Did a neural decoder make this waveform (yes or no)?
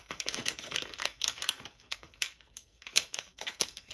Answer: yes